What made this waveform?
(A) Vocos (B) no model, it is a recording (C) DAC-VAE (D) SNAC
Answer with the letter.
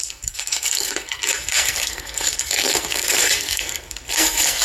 D